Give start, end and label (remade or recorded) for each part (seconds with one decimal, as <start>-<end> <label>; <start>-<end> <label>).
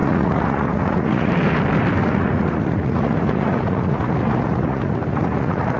0.0-1.3 remade; 1.3-2.0 recorded; 2.0-5.8 remade